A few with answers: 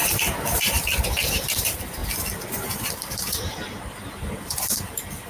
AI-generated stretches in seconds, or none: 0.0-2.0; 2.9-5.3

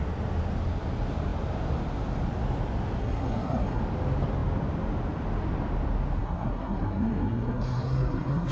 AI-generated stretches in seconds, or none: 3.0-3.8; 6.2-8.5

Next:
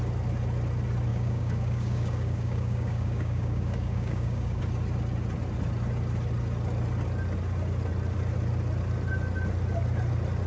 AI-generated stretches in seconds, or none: 1.1-4.6